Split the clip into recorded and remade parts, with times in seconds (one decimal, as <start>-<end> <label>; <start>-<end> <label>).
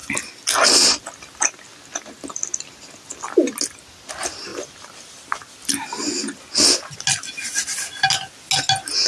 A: 0.0-9.1 recorded